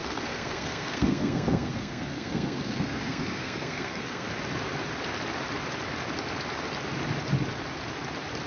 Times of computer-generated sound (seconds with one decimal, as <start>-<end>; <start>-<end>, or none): 0.0-4.3